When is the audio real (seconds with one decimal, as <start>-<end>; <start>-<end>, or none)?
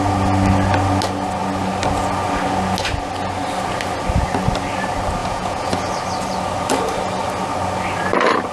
0.0-5.2; 5.9-8.5